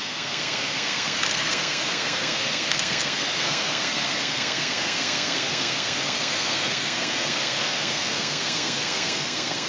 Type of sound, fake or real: fake